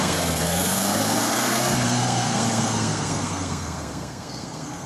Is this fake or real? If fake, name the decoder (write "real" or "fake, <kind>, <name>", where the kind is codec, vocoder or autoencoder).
fake, codec, SNAC